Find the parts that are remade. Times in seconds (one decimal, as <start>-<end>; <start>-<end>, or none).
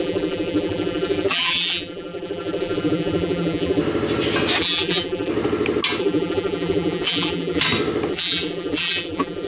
0.0-3.8; 4.6-5.3; 6.0-7.6; 8.1-9.5